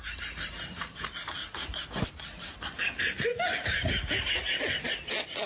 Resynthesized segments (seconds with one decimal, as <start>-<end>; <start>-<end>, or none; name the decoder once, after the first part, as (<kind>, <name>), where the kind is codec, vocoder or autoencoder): none